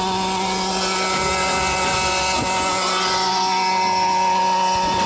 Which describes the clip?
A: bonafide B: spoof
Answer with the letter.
A